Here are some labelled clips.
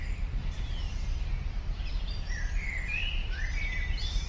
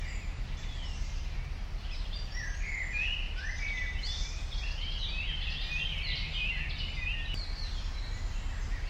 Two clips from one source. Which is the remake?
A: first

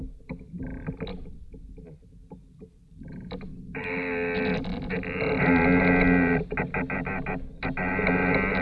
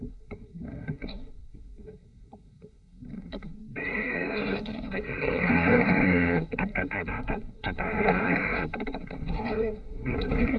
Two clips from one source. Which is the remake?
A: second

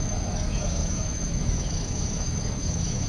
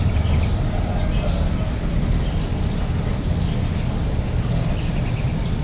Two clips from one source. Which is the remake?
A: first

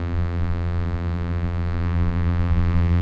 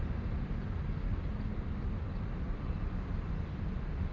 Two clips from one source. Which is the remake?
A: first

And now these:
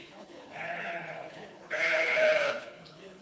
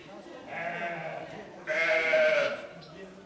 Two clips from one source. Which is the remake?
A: first